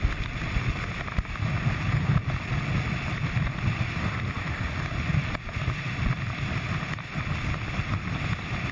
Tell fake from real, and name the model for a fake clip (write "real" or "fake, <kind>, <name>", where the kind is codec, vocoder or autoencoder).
real